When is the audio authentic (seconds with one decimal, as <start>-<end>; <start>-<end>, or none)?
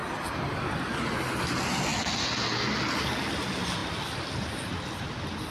0.0-5.5